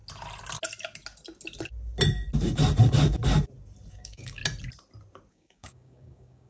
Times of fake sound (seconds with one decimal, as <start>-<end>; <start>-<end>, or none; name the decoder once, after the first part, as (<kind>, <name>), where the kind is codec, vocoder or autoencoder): 3.9-4.4 (codec, DAC); 5.3-6.5